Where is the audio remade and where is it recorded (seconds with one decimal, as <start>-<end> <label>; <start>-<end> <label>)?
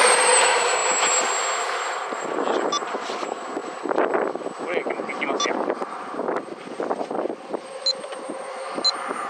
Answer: 0.0-9.3 recorded